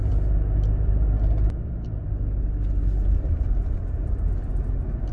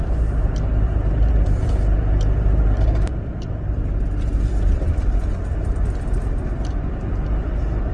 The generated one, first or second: second